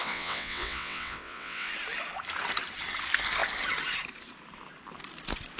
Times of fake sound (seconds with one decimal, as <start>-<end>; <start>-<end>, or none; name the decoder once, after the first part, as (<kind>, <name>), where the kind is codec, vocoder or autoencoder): 0.0-1.7 (vocoder, WaveNeXt)